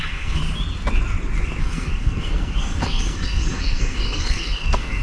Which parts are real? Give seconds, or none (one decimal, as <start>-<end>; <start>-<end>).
0.4-1.6